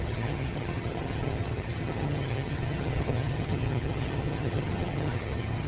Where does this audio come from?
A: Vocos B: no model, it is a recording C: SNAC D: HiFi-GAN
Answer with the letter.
D